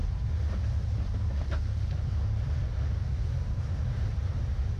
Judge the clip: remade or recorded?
remade